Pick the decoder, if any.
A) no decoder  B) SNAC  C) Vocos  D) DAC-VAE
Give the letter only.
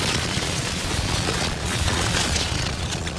C